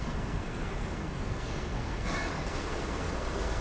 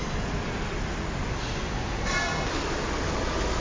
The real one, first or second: second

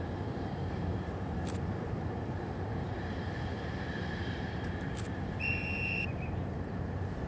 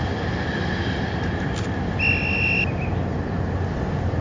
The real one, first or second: second